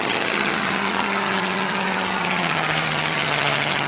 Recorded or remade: remade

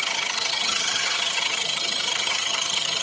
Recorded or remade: remade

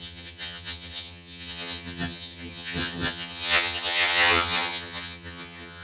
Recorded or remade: remade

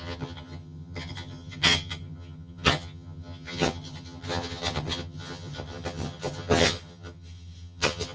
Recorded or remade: remade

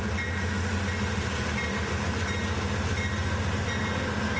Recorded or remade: recorded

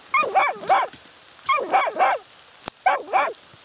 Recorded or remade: recorded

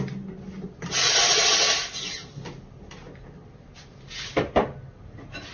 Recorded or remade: recorded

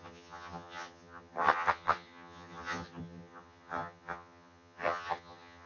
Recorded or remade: remade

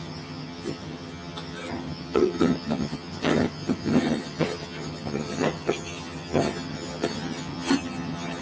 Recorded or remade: remade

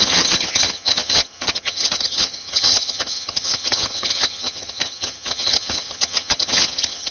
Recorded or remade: remade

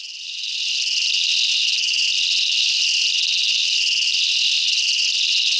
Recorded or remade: recorded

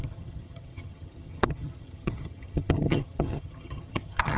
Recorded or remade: remade